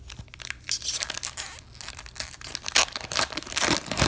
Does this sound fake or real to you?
real